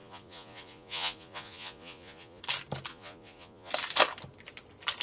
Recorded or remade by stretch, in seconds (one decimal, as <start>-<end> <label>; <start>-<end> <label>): 0.0-2.4 remade; 2.4-2.9 recorded; 2.9-3.7 remade; 3.7-5.0 recorded